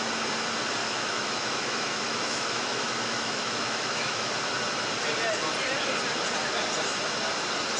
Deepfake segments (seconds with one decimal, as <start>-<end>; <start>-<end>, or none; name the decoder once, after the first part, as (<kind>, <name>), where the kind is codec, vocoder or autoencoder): 0.8-4.3 (autoencoder, DAC-VAE)